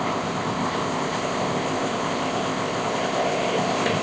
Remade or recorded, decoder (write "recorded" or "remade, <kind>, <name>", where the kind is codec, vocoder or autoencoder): remade, codec, ZipCodec